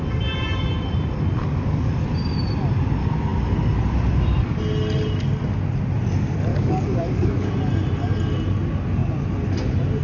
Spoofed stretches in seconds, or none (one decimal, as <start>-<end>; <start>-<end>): 1.4-1.9; 6.5-7.5

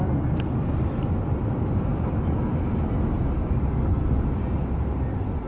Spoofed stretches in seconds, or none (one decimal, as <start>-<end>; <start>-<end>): none

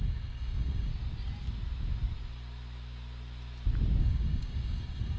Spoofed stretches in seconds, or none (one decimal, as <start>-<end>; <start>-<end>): 0.0-0.9; 4.0-5.2

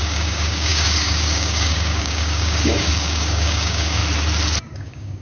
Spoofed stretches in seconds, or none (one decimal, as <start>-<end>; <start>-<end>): 0.0-4.0; 4.6-5.2

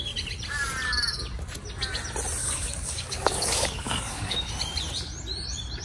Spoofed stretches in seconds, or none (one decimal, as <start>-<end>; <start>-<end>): 2.4-4.5

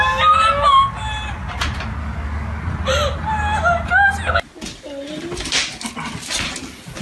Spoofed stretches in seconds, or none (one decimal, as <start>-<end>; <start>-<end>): 2.0-2.6